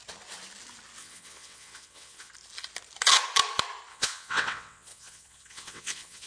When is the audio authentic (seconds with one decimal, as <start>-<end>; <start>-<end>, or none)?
0.0-1.0; 2.3-3.9